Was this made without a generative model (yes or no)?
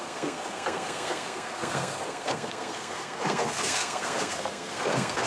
no